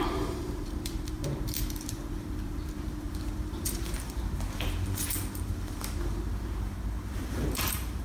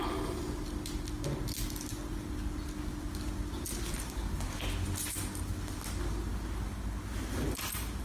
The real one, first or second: second